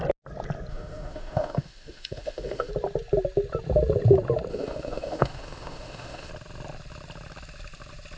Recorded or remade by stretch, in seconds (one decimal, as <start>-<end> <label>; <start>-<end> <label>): 0.0-0.7 recorded; 0.7-2.7 remade; 2.7-4.5 recorded; 4.5-6.3 remade; 6.3-8.2 recorded